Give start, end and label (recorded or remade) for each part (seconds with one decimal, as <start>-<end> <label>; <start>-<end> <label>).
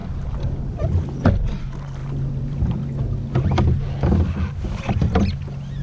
0.0-5.8 recorded